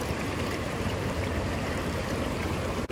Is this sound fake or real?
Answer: fake